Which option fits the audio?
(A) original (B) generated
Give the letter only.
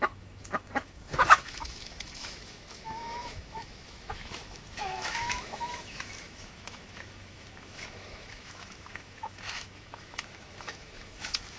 B